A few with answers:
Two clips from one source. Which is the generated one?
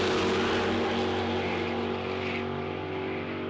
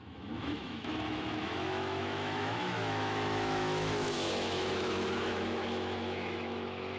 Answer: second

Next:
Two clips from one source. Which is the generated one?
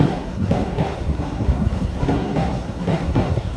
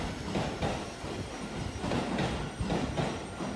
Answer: first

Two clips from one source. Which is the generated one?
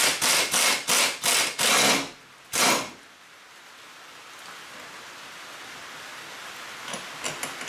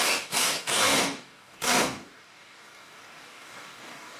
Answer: second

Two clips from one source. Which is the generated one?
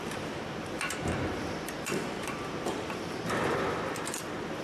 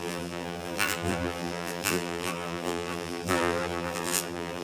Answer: second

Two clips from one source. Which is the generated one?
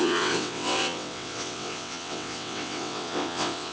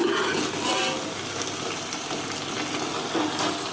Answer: first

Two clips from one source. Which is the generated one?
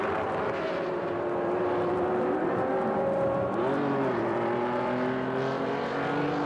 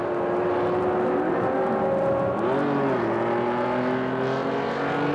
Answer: first